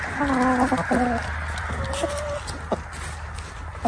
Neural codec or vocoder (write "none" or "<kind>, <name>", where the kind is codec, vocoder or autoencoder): none